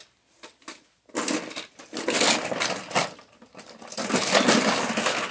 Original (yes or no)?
yes